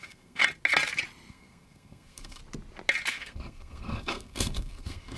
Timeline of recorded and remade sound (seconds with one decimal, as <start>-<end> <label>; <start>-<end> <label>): 0.0-0.4 remade; 0.4-1.3 recorded; 1.3-2.4 remade; 2.4-3.1 recorded; 3.1-5.2 remade